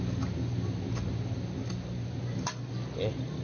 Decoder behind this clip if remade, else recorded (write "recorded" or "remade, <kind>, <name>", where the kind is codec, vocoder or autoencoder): recorded